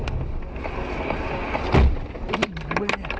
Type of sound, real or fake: real